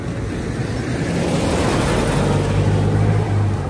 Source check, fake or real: real